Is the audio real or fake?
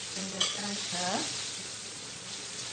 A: fake